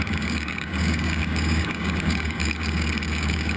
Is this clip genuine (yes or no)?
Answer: no